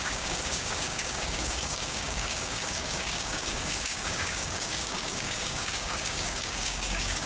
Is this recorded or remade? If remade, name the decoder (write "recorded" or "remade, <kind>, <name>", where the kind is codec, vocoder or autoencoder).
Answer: remade, codec, DAC